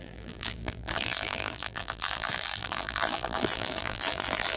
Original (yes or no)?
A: no